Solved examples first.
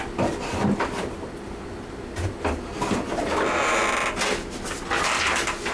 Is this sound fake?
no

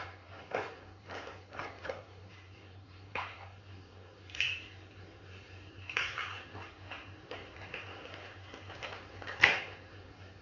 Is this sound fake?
yes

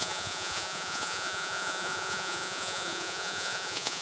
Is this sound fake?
yes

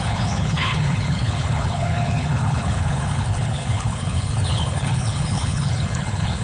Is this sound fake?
yes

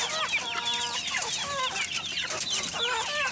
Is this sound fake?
no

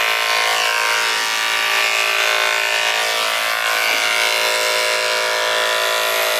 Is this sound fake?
no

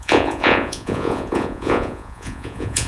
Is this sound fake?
yes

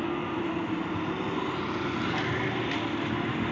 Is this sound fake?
no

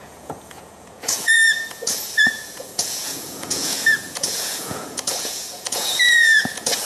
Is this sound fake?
yes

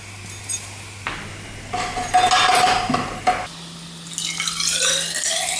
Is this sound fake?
no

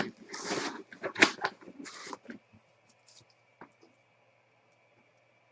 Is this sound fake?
no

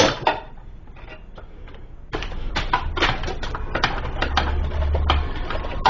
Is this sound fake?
no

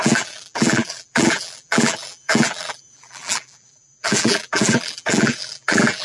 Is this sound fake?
yes